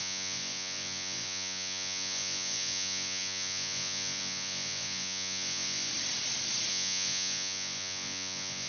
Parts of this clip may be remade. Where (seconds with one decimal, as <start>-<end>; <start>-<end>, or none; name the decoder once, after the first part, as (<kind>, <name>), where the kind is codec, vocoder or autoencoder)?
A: 0.0-5.9 (vocoder, Vocos); 6.7-8.7